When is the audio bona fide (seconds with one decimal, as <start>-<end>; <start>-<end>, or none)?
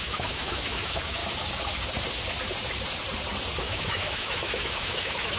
1.2-3.6